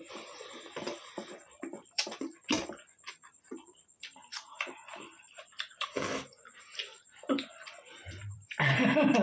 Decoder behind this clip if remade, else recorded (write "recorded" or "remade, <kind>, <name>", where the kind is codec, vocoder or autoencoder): remade, vocoder, BigVGAN v2